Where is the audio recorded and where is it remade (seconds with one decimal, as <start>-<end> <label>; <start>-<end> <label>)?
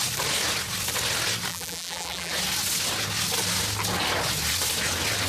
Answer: 0.0-1.5 recorded; 1.5-2.3 remade; 2.3-5.3 recorded